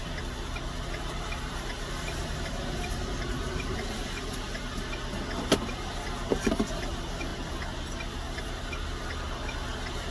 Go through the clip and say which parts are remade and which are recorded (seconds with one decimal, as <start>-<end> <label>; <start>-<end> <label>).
0.0-10.1 recorded